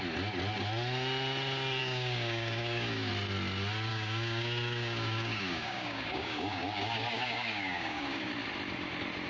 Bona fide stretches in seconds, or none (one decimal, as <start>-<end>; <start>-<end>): 0.0-1.8; 3.1-3.9; 8.3-9.3